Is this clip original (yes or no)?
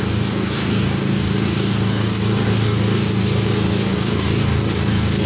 no